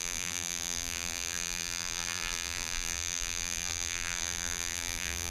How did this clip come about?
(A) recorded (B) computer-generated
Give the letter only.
B